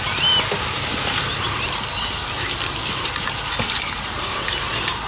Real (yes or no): yes